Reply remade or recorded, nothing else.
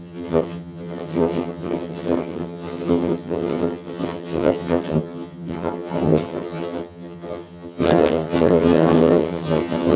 remade